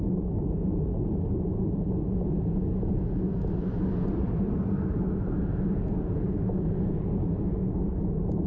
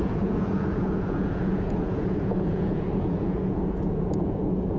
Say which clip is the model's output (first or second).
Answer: second